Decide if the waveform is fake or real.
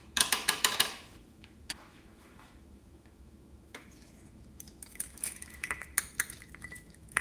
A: fake